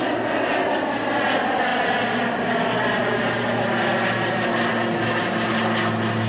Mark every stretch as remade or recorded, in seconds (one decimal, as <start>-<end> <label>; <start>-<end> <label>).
0.0-6.3 recorded